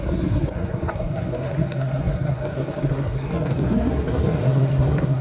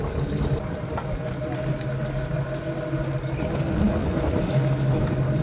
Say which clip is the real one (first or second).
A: second